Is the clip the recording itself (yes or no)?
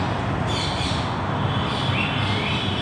yes